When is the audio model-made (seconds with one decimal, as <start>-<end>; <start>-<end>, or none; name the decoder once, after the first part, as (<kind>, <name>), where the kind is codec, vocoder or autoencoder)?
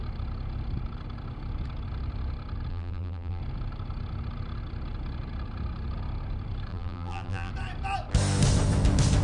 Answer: 2.7-3.4 (vocoder, BigVGAN v2); 6.7-7.5